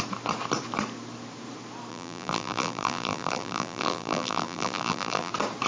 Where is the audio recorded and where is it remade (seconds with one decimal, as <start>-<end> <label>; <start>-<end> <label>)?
0.0-1.9 recorded; 1.9-5.3 remade; 5.3-5.7 recorded